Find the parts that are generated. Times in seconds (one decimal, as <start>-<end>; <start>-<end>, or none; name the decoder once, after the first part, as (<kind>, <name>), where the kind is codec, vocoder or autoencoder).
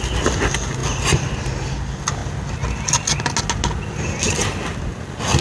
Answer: none